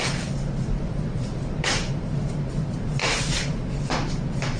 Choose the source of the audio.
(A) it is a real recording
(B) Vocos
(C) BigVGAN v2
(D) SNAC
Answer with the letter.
C